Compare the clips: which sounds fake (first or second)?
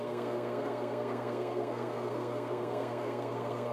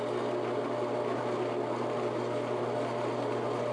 first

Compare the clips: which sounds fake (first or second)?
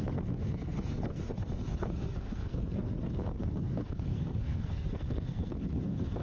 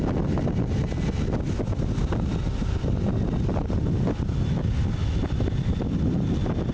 first